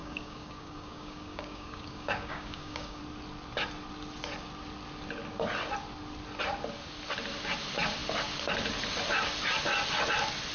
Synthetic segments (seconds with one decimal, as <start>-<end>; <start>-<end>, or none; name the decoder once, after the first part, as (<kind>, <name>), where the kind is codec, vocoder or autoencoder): 0.0-3.0 (codec, DAC)

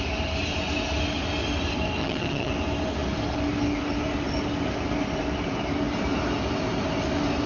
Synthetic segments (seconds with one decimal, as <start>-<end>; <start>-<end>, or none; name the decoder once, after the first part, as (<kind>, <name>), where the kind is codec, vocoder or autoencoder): 2.0-2.5 (vocoder, HiFi-GAN)

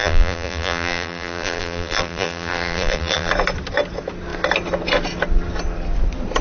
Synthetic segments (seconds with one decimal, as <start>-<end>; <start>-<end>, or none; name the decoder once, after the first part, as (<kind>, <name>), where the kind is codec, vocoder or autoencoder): 0.0-3.3 (vocoder, BigVGAN v2)

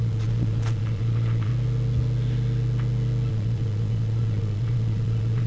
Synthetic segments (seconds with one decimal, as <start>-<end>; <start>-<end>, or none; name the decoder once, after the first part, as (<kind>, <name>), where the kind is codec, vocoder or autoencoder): 0.0-1.5 (vocoder, Vocos); 3.3-5.5

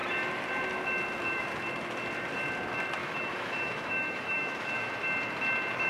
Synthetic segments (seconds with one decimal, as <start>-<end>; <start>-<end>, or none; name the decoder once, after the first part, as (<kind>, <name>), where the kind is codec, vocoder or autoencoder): 3.0-4.9 (autoencoder, DAC-VAE)

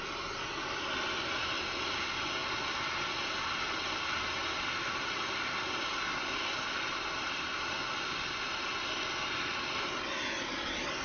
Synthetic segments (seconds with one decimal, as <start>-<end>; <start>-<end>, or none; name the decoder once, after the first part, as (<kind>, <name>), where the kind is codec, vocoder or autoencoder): none

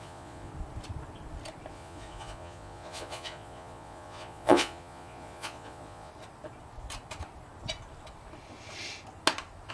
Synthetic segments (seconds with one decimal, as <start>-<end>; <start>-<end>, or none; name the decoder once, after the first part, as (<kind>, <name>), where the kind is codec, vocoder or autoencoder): 0.0-0.5 (vocoder, Vocos); 1.7-6.1